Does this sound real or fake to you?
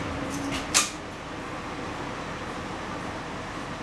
real